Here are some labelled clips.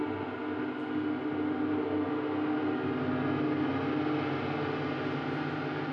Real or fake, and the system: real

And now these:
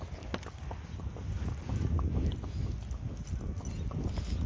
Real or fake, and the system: real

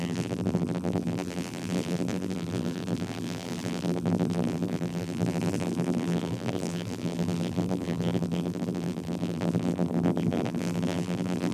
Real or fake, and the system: fake, vocoder, BigVGAN v2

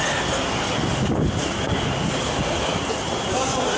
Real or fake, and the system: real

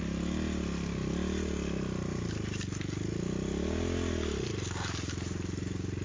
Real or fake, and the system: real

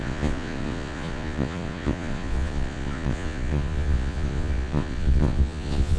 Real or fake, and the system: fake, vocoder, Vocos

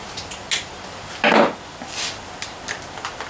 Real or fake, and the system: real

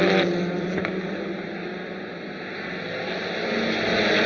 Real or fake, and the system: real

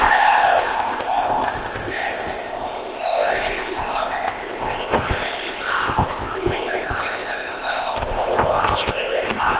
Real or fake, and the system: fake, codec, ZipCodec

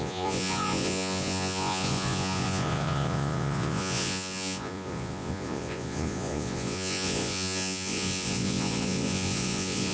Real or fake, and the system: fake, vocoder, Vocos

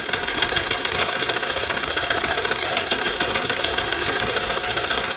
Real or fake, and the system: fake, codec, SNAC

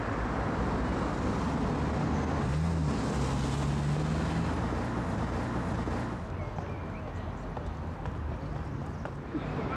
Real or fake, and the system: real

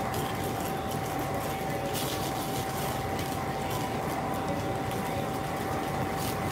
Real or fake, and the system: real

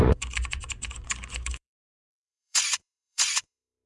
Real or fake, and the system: fake, vocoder, Vocos